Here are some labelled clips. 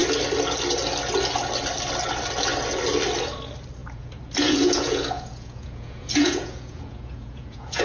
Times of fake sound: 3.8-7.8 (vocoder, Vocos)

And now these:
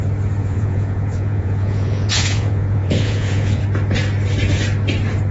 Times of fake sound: 0.4-3.6 (vocoder, Vocos)

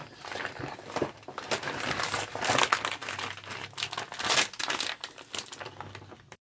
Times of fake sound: none